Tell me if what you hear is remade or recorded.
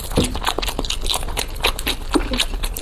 recorded